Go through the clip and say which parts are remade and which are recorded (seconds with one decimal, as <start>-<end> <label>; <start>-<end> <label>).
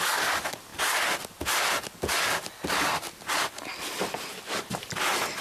0.0-5.4 recorded